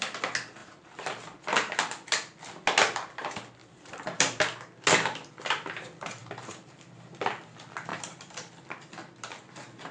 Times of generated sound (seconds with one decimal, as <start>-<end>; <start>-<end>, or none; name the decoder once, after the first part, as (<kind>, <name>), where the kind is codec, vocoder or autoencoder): 0.6-1.2 (vocoder, BigVGAN v2); 3.6-4.4; 6.2-7.1; 7.9-8.5